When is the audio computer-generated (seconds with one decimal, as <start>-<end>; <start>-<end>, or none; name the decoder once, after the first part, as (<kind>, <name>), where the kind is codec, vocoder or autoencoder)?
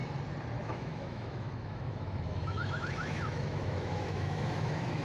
0.6-5.0 (autoencoder, DAC-VAE)